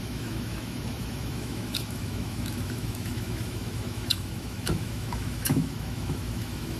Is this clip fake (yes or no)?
yes